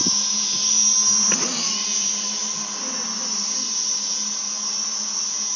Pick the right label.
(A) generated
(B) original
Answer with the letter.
B